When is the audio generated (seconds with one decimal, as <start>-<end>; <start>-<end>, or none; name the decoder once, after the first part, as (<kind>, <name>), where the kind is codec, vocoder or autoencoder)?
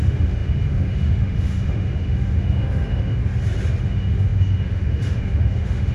0.0-3.2 (autoencoder, DAC-VAE); 3.8-5.9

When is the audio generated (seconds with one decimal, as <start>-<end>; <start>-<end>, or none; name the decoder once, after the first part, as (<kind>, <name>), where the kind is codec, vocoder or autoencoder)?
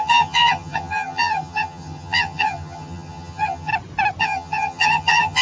0.0-3.7 (vocoder, HiFi-GAN); 4.2-5.4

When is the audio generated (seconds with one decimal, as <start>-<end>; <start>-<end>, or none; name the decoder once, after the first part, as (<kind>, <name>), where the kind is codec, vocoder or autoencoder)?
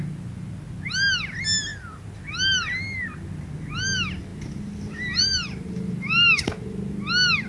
4.3-5.9 (vocoder, BigVGAN v2)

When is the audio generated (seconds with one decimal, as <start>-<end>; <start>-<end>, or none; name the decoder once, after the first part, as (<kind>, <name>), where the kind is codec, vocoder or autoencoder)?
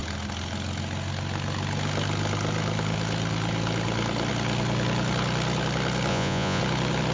6.1-6.6 (vocoder, Vocos)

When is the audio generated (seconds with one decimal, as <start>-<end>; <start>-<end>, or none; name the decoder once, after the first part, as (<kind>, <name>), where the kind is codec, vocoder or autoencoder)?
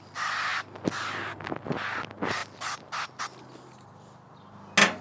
none